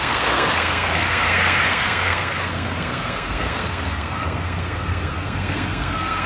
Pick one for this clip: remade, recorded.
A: remade